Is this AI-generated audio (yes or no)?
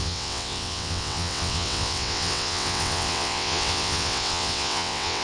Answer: yes